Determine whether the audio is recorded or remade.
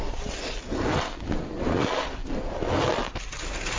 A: recorded